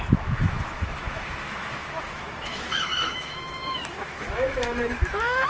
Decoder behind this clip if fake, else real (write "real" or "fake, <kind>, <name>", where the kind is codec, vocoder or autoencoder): fake, autoencoder, DAC-VAE